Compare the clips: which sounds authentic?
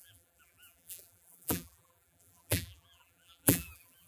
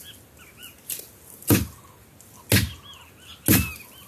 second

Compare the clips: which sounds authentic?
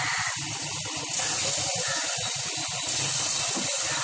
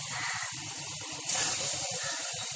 first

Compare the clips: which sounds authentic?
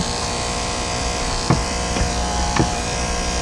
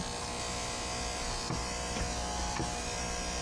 second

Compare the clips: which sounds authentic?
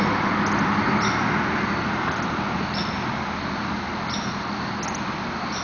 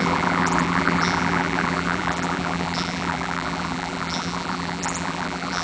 first